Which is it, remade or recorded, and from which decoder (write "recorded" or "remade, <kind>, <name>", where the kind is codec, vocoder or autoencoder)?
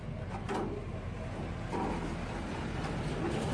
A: recorded